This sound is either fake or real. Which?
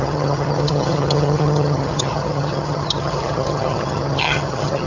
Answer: fake